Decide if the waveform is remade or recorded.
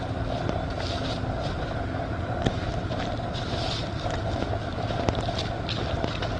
recorded